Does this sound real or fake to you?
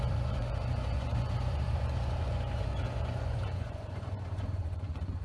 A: fake